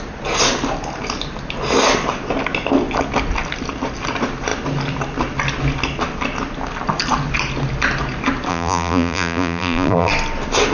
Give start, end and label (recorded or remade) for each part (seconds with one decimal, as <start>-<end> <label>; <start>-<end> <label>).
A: 0.0-8.5 recorded; 8.5-10.1 remade; 10.1-10.7 recorded